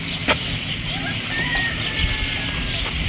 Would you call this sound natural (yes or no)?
yes